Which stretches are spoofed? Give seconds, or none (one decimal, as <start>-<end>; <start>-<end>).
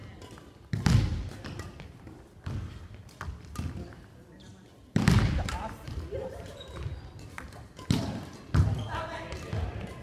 3.7-4.5; 5.2-8.9